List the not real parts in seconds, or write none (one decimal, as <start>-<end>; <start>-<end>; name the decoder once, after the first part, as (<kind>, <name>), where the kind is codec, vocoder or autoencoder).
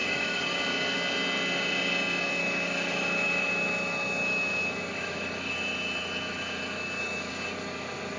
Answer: 0.0-0.6 (autoencoder, DAC-VAE); 2.4-7.3